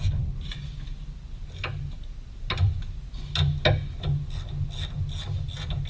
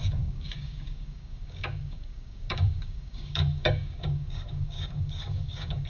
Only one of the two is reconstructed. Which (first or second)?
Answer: second